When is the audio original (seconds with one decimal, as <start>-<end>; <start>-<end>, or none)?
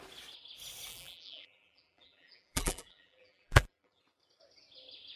0.0-0.9; 4.0-5.2